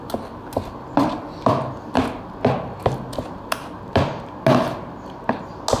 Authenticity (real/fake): real